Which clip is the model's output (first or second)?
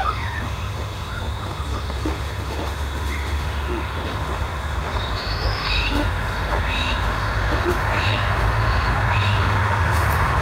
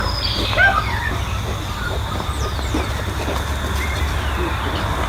first